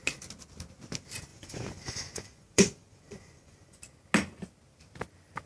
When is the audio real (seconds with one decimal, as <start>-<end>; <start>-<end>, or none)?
0.0-1.3; 3.8-5.5

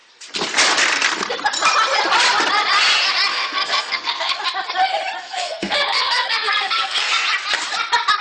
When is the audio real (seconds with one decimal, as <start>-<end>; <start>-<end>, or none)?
0.0-3.3; 4.4-5.2; 7.1-8.2